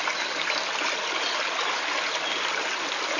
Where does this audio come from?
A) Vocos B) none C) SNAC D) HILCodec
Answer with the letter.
B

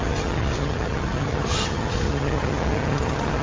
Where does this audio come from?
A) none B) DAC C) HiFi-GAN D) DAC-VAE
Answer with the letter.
C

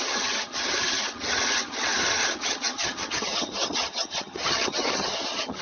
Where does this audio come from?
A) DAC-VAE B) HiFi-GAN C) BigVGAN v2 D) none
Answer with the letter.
B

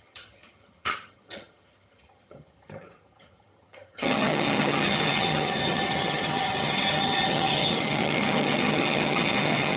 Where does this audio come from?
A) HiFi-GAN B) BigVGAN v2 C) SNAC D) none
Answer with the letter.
A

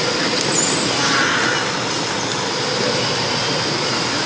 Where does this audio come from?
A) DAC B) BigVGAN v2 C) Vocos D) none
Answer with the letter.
D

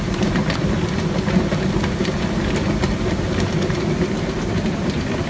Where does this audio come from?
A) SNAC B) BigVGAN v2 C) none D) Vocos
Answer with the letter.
B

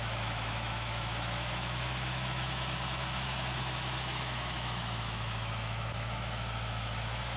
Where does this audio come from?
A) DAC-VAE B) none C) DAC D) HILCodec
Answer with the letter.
A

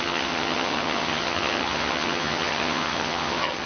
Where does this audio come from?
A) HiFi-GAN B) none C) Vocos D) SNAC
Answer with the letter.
A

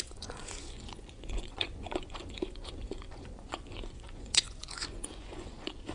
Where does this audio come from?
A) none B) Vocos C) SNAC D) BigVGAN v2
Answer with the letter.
B